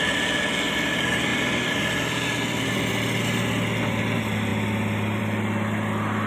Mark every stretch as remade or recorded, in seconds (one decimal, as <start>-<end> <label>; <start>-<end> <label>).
0.0-6.3 recorded